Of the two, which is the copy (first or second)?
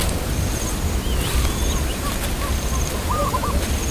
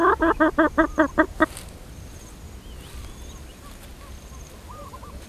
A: first